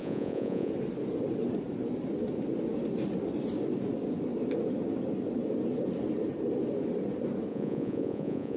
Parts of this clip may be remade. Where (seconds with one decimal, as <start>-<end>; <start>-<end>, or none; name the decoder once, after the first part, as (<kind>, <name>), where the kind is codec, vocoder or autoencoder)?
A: 0.0-0.7 (vocoder, Vocos); 7.5-8.6